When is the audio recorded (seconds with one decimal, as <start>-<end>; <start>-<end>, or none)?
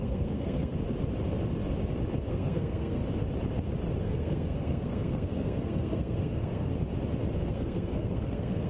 0.7-2.3; 3.0-4.0; 6.7-7.5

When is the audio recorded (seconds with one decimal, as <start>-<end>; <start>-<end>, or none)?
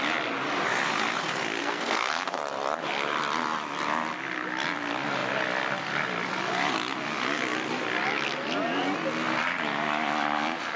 0.0-1.6; 2.4-10.8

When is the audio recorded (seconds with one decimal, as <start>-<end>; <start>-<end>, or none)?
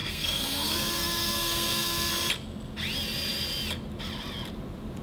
2.1-5.0